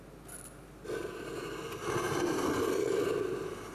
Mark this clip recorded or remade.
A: recorded